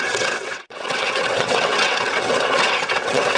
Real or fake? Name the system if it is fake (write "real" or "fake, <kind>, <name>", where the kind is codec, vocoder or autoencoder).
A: fake, vocoder, WaveNeXt